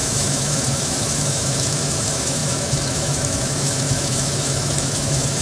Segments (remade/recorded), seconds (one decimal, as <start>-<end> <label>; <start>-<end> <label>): 0.0-5.4 remade